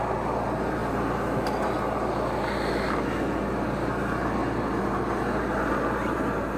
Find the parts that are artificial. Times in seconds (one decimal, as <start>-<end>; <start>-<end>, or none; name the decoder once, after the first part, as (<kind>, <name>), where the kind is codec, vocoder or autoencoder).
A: none